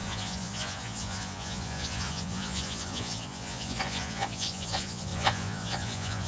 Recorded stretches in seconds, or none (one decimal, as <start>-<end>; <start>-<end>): none